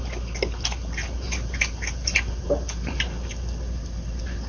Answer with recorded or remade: recorded